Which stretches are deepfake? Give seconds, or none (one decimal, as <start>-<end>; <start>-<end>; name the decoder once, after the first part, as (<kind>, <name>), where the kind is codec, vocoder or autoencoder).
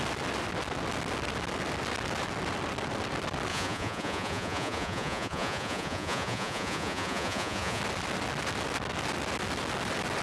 3.5-7.8 (vocoder, Vocos)